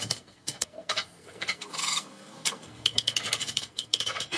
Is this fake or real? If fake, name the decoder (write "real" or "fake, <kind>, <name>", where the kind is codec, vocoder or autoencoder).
fake, codec, SNAC